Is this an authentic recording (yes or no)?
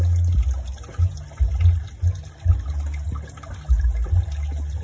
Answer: yes